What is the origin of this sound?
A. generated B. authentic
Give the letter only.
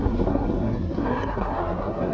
A